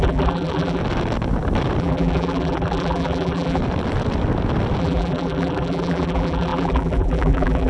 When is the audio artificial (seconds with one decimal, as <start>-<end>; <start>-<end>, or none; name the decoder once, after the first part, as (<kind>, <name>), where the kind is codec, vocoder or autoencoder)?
0.0-0.8 (vocoder, BigVGAN v2); 1.8-3.6; 4.8-7.7